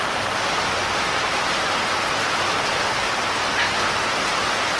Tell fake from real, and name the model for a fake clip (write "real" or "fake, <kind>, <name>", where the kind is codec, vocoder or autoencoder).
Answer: real